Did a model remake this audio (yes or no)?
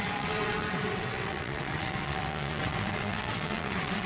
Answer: yes